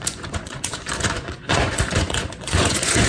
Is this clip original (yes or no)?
no